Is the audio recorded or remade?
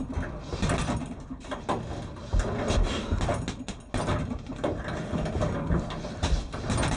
recorded